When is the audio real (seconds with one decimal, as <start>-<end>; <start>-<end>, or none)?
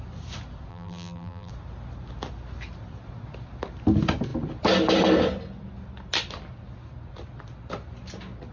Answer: 0.0-0.7; 1.5-8.5